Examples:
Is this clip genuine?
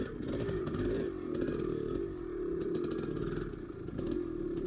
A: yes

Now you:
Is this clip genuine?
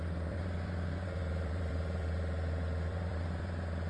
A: no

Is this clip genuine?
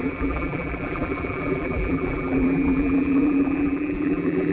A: no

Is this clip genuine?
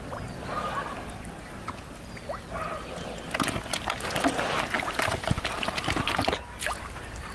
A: yes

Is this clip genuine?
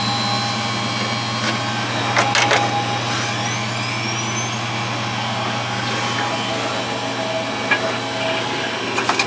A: yes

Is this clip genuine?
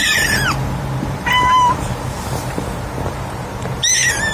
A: no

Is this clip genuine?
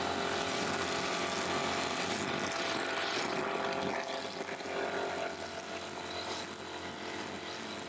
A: yes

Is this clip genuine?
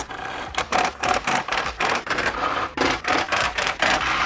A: no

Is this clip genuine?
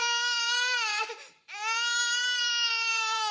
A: no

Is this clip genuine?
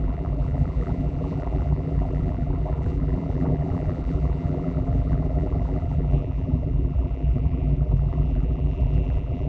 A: no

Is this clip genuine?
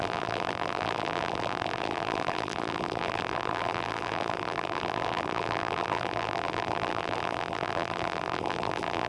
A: no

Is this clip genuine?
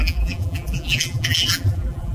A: no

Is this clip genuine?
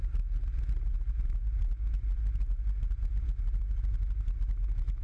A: yes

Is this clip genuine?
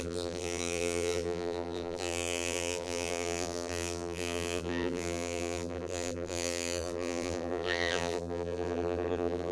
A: no